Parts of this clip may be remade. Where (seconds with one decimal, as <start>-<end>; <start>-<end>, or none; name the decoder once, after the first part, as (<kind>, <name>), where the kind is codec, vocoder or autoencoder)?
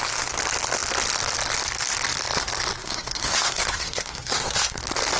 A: 2.8-4.8 (codec, SNAC)